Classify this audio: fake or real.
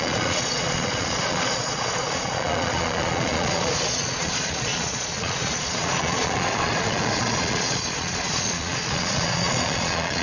fake